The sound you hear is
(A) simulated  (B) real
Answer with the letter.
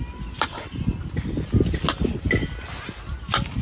B